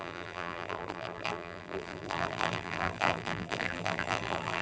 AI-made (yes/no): yes